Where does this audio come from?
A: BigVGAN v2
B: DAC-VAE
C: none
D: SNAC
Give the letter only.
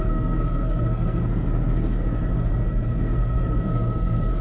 D